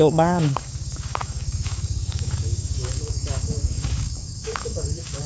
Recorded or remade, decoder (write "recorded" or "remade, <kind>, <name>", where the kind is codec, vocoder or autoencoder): remade, codec, DAC